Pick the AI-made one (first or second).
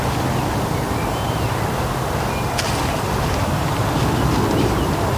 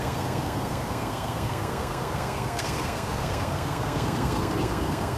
second